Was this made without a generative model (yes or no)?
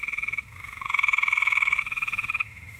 no